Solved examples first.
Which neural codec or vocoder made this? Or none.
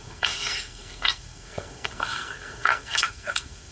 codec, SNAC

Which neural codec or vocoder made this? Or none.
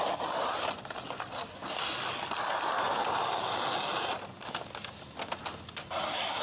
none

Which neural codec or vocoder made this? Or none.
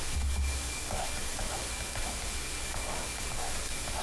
codec, DAC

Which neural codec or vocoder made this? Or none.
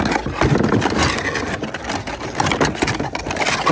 none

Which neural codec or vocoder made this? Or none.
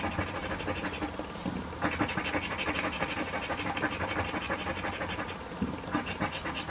none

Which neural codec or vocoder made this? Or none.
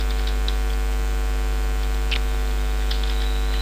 none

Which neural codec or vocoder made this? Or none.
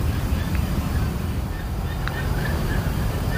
vocoder, BigVGAN v2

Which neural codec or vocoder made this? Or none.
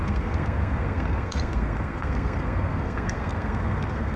codec, SNAC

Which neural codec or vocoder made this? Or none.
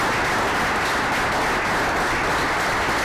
none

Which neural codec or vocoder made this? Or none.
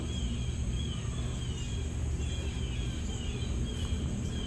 none